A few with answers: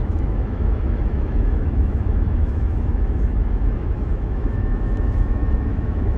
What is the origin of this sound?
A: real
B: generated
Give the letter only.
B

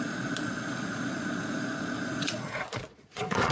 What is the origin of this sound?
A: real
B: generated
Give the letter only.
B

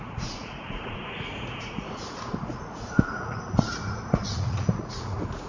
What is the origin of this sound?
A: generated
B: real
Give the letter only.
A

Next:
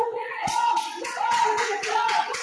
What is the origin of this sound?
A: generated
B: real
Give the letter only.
A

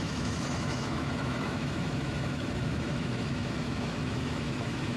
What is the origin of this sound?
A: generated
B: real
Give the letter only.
A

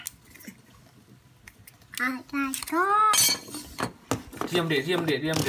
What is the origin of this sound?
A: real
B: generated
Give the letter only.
A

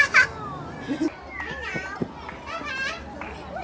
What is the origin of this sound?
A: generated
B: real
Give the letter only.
B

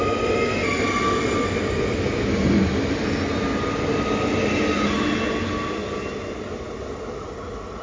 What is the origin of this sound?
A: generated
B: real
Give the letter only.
B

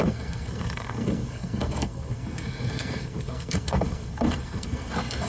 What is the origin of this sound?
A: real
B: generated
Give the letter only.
B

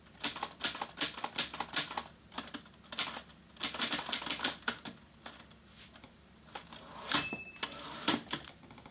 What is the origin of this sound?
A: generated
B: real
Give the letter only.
B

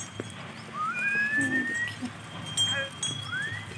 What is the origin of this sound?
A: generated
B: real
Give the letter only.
B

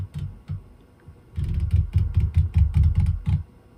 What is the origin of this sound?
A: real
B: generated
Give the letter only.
A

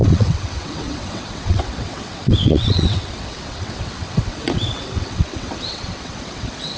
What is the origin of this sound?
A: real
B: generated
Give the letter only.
B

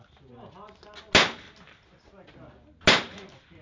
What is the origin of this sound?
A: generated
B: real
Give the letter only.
B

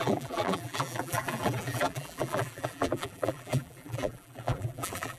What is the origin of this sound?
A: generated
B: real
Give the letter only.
A